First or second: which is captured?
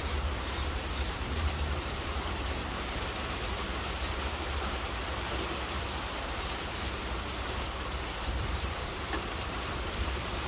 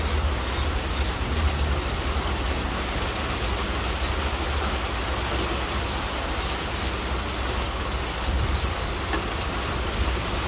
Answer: second